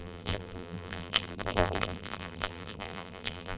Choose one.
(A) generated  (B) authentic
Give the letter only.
A